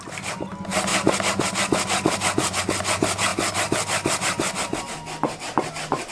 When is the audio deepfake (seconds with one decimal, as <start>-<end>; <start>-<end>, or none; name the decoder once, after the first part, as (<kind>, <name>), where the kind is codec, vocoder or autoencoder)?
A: none